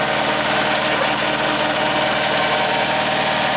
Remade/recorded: recorded